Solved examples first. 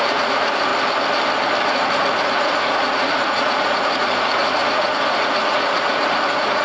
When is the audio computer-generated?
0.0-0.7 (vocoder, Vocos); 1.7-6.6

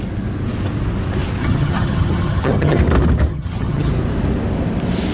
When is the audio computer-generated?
1.4-2.8 (vocoder, HiFi-GAN); 3.3-3.9

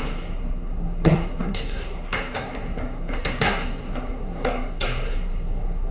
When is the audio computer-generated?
0.0-5.9 (codec, SNAC)

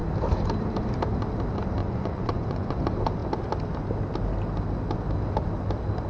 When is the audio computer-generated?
1.8-2.8 (vocoder, Vocos)

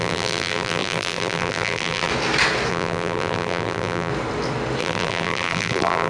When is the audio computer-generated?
0.0-2.1 (vocoder, BigVGAN v2); 2.7-4.1; 4.8-6.1

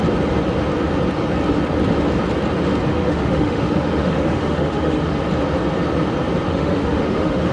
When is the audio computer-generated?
2.9-5.2 (autoencoder, DAC-VAE); 6.5-7.5

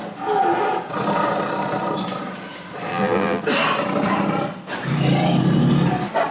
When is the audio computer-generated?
2.9-3.4 (vocoder, BigVGAN v2)